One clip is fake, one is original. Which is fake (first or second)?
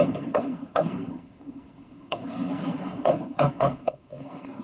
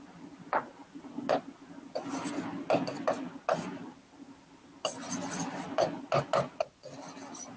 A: first